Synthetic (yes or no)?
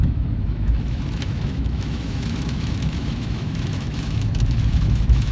yes